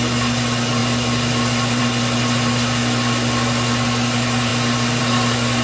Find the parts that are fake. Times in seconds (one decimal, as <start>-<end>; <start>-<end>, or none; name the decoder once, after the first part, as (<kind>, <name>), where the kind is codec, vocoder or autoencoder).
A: none